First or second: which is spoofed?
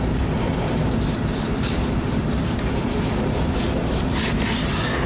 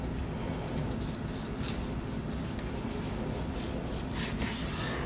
first